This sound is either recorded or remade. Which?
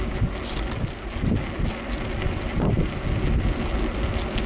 recorded